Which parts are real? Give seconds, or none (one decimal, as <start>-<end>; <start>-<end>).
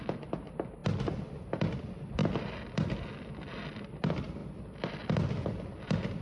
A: 0.0-6.2